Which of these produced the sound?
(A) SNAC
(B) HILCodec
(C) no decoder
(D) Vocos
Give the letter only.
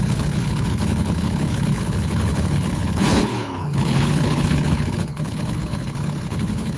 B